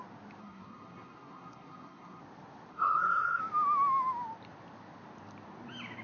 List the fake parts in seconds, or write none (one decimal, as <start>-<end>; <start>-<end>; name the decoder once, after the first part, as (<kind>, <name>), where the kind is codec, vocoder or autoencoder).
0.4-2.2 (codec, SNAC); 2.7-3.4